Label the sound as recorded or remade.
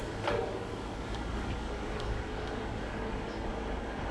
remade